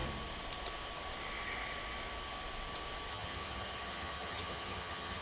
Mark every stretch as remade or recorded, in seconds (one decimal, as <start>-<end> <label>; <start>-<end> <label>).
0.0-3.1 recorded; 3.1-5.2 remade